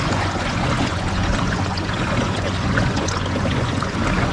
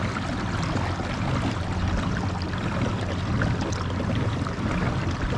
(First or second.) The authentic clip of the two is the second